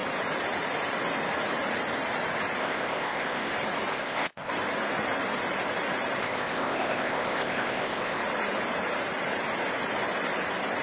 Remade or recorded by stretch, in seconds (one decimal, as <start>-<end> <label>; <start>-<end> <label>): 0.0-2.6 recorded; 2.6-3.5 remade; 3.5-3.9 recorded; 3.9-4.5 remade; 4.5-6.2 recorded; 6.2-8.2 remade; 8.2-10.8 recorded